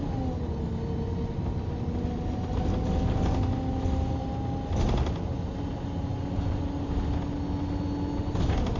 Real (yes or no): yes